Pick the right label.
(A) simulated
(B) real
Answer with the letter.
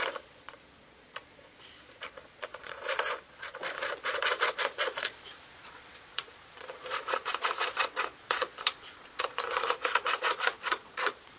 A